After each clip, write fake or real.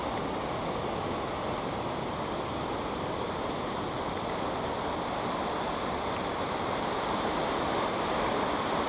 real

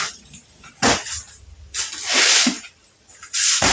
real